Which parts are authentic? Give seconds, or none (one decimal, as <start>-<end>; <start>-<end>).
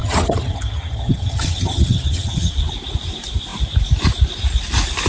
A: 2.5-5.1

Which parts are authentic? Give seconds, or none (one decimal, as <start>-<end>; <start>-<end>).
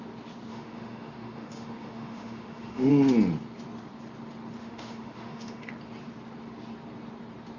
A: 0.0-0.5; 2.9-4.6; 5.7-7.6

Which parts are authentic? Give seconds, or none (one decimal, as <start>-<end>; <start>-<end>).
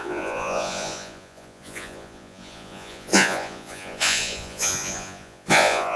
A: none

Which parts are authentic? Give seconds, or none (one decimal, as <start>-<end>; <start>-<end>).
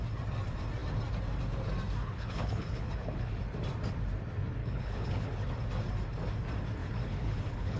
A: 0.0-2.0; 3.4-4.6; 5.5-6.8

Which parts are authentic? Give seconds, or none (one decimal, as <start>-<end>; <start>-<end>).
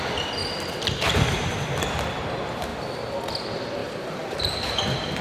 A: 0.0-0.4; 1.5-3.8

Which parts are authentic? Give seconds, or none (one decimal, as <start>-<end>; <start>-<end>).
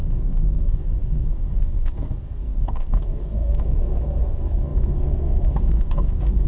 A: none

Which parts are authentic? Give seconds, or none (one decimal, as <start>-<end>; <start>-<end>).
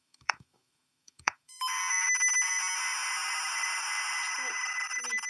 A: 1.8-5.3